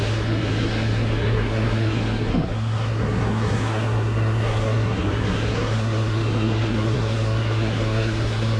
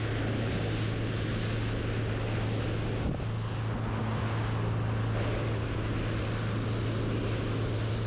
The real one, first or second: second